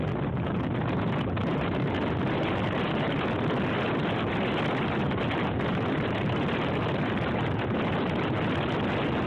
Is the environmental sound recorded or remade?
recorded